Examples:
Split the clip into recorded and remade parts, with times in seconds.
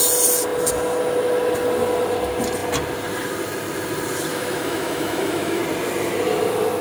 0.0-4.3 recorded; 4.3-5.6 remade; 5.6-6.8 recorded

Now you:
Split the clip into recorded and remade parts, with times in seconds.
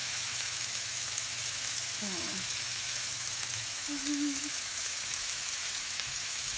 0.0-6.6 remade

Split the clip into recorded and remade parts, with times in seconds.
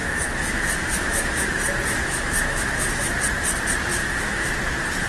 0.0-3.1 remade; 3.1-4.0 recorded; 4.0-4.5 remade; 4.5-5.1 recorded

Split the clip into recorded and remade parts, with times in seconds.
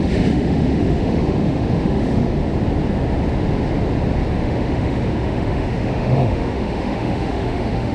0.0-2.4 remade; 2.4-4.3 recorded; 4.3-7.9 remade